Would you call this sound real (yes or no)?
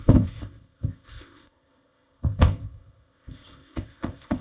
no